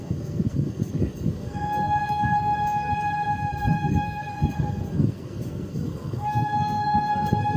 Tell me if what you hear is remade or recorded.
remade